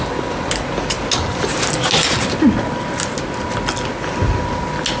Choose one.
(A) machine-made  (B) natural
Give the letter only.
B